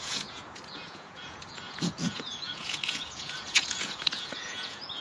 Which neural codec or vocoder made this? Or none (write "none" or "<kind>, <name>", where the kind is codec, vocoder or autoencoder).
vocoder, Vocos